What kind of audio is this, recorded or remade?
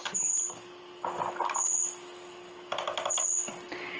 recorded